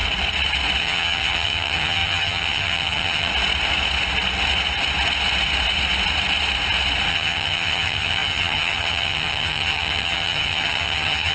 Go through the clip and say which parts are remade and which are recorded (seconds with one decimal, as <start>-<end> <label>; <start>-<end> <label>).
0.0-0.8 recorded; 0.8-3.3 remade; 3.3-7.1 recorded; 7.1-11.3 remade